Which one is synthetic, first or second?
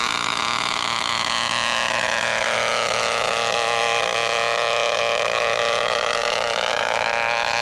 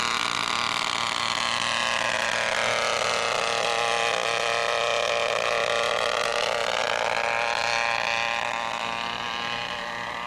first